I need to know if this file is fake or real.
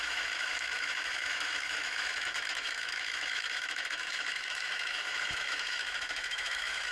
fake